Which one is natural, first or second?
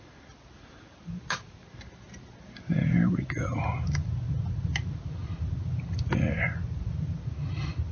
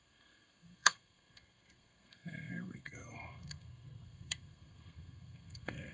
first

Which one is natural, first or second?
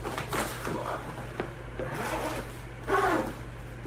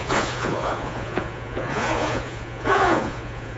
first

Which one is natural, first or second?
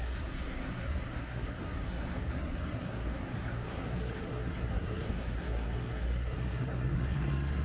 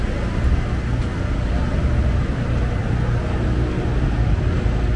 second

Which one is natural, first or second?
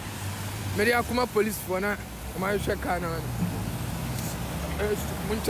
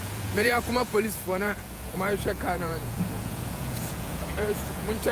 first